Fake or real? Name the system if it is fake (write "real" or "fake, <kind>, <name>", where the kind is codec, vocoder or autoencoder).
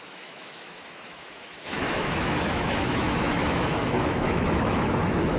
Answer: fake, autoencoder, DAC-VAE